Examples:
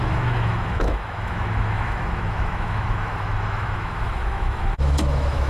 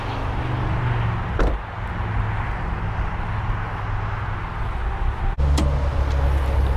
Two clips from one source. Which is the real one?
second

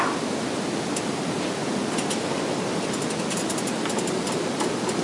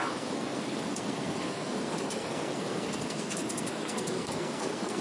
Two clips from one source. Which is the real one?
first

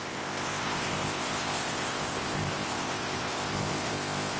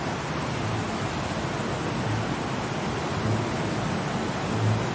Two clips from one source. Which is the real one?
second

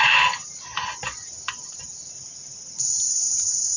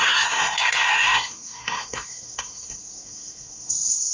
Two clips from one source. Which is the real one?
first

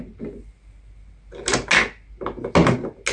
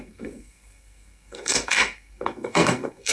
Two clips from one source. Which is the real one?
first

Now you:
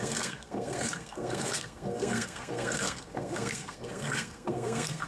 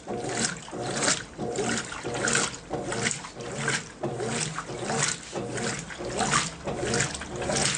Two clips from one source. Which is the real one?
second